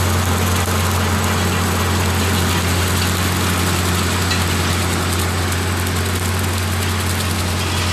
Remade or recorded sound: recorded